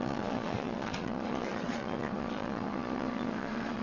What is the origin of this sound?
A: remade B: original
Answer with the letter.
A